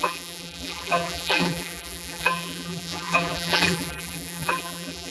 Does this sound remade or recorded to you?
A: remade